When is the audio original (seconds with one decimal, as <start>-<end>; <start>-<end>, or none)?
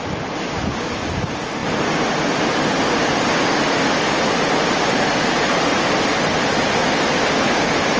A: 0.0-8.0